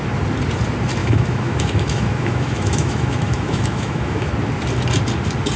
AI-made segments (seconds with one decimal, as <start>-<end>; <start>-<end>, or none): 1.0-4.3